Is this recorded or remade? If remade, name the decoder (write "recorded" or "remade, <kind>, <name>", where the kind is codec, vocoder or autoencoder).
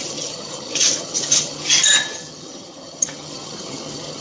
remade, vocoder, HiFi-GAN